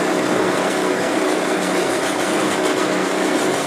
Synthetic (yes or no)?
yes